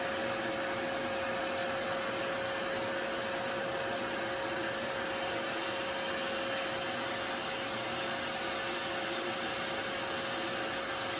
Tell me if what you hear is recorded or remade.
recorded